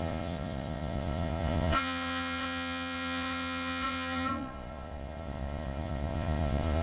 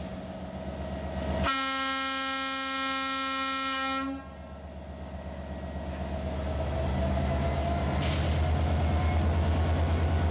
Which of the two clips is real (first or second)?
second